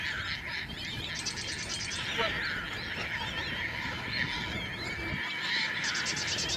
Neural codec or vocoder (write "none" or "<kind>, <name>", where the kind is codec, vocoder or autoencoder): none